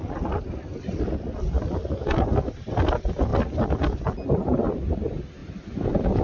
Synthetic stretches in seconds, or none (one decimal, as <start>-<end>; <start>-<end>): 5.4-6.2